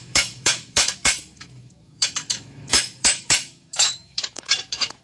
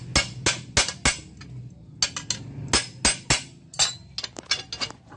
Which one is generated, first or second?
first